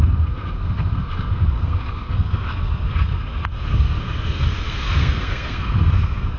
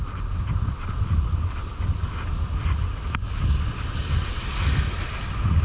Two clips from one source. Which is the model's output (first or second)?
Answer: first